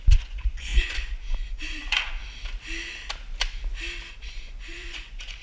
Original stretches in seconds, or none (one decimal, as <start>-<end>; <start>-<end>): 2.2-4.1